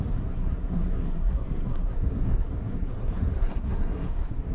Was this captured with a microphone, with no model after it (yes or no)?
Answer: no